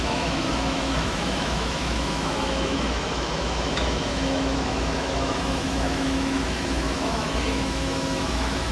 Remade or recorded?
remade